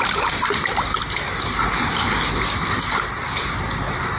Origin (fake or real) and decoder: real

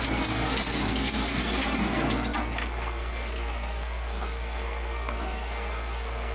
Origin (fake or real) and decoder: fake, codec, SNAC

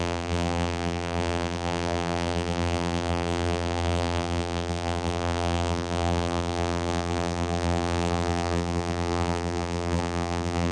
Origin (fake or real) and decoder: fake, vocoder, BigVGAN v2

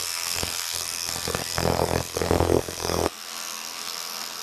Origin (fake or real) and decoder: fake, codec, SNAC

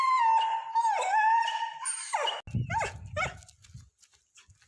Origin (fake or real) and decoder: real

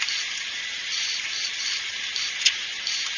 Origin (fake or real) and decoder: real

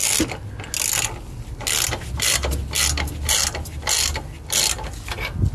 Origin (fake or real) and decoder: real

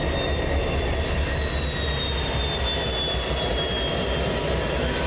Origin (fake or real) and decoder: real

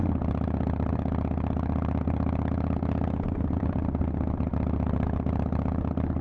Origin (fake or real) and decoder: real